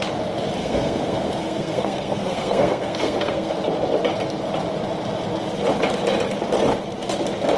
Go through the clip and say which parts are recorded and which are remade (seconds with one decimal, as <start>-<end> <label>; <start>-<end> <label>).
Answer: 0.0-0.6 recorded; 0.6-3.5 remade; 3.5-7.6 recorded